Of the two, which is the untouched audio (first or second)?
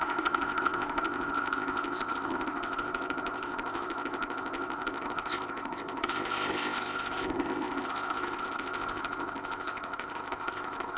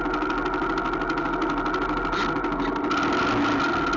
second